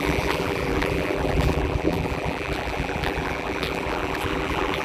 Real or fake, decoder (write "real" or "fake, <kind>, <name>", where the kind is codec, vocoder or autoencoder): fake, vocoder, BigVGAN v2